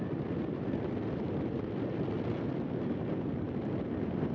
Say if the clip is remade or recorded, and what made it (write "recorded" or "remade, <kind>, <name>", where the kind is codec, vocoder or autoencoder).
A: recorded